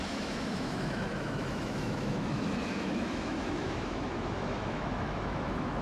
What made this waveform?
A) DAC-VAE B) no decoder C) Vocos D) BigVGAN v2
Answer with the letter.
A